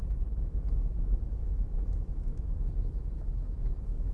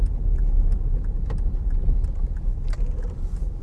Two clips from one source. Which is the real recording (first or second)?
second